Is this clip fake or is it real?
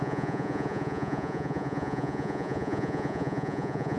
fake